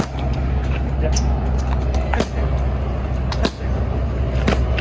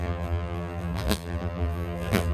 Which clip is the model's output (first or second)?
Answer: second